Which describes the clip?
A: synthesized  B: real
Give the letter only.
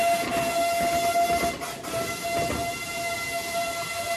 B